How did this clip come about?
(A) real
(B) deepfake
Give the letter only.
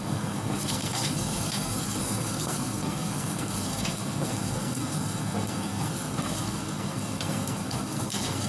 B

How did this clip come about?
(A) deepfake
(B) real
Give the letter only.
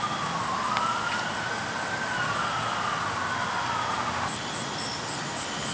B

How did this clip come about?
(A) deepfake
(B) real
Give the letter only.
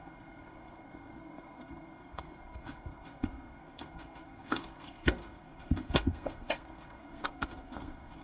A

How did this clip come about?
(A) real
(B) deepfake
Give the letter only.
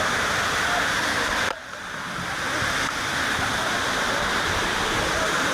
A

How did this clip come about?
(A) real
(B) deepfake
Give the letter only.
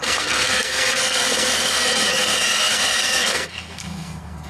B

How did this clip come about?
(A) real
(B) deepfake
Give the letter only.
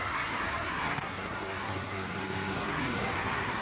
B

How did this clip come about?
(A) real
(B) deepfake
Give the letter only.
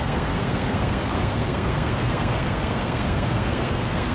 B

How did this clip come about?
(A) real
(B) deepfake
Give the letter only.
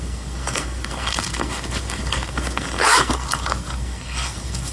B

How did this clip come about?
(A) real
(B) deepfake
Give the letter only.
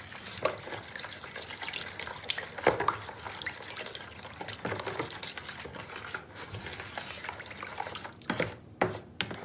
A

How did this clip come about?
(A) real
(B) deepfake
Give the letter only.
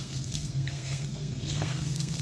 B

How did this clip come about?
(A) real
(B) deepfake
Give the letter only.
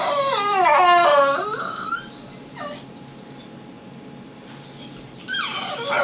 A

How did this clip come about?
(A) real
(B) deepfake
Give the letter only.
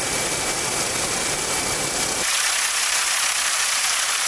A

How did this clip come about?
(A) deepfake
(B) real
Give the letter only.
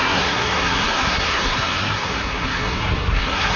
A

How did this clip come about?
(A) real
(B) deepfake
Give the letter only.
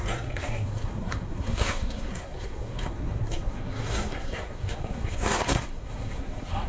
B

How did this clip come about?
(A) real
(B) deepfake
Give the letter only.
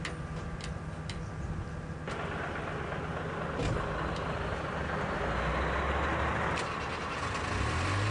A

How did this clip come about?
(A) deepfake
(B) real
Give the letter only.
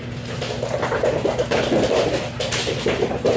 B